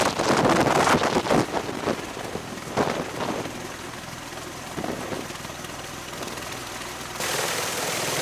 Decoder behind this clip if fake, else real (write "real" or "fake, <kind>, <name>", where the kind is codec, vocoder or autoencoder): real